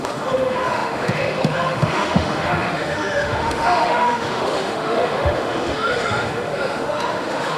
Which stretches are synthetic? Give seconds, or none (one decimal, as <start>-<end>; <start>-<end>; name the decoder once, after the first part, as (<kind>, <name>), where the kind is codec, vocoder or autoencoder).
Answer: 0.0-7.6 (autoencoder, DAC-VAE)